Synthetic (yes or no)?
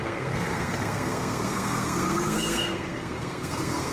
yes